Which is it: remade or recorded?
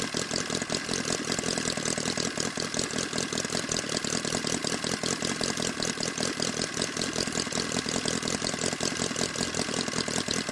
recorded